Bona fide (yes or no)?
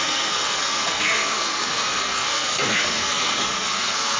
no